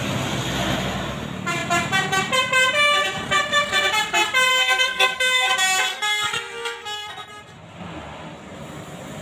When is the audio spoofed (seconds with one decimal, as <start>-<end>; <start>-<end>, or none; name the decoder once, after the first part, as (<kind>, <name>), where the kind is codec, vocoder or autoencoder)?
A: 4.5-5.5 (codec, SNAC); 5.9-7.3